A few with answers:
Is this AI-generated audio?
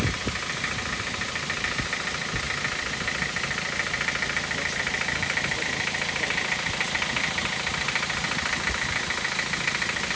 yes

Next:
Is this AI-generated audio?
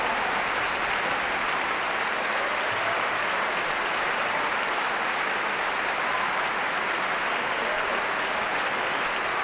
no